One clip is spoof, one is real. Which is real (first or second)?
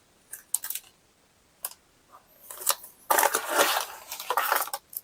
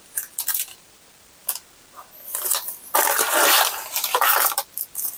first